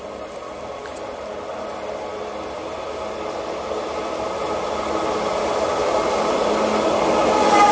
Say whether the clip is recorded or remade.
recorded